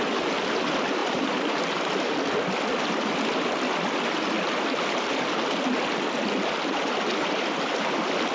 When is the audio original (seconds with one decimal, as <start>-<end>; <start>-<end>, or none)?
0.0-8.3